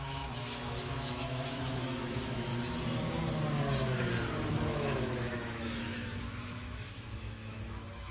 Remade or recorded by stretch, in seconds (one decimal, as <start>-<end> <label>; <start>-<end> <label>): 0.0-2.5 remade; 2.5-4.5 recorded; 4.5-8.1 remade